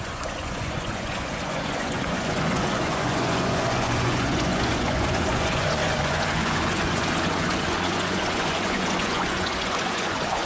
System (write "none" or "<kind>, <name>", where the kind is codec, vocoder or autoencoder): vocoder, Vocos